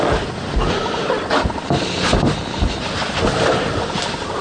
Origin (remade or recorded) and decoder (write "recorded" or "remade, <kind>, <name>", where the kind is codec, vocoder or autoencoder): recorded